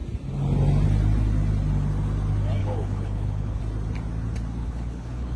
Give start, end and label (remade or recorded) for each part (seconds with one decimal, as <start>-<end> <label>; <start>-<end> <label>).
0.0-2.6 recorded; 2.6-3.6 remade; 3.6-4.6 recorded; 4.6-5.4 remade